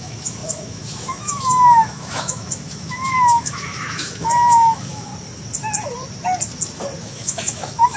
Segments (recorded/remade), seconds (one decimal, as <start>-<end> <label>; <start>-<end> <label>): 0.0-5.1 remade; 5.1-7.0 recorded; 7.0-8.0 remade